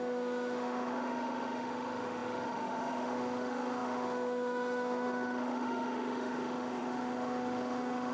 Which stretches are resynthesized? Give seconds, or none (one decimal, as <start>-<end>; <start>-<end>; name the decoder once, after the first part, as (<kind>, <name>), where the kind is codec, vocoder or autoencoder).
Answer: 0.0-8.1 (autoencoder, DAC-VAE)